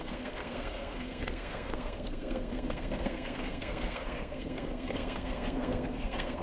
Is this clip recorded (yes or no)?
no